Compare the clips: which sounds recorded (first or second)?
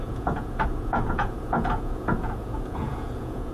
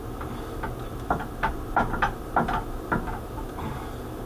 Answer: second